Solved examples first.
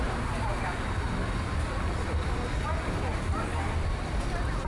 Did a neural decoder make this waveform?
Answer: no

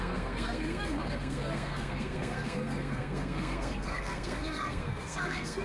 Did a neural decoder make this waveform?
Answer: yes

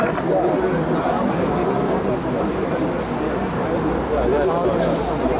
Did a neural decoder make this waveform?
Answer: no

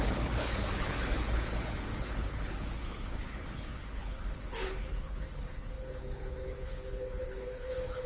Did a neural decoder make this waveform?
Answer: yes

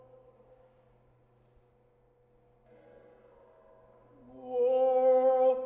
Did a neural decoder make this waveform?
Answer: no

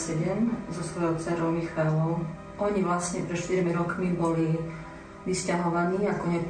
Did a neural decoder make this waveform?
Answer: no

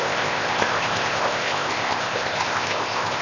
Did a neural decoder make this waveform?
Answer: yes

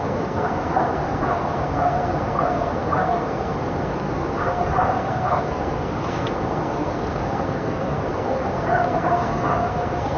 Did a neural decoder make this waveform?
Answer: yes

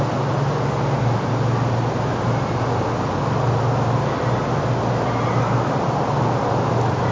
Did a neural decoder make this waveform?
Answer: no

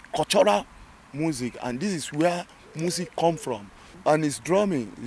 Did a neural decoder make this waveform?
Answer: no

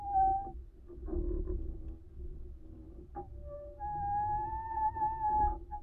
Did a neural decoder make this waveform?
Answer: no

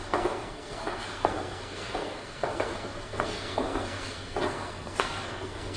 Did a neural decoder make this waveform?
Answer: yes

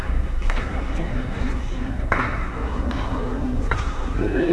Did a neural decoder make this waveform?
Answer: yes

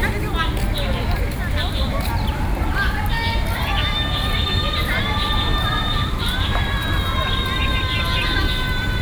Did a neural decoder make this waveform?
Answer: no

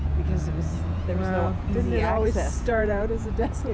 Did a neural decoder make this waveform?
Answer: yes